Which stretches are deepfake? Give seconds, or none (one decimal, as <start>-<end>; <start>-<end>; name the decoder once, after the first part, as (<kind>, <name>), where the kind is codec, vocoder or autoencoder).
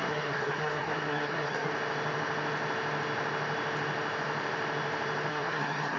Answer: 0.0-1.7 (codec, SNAC); 5.3-6.0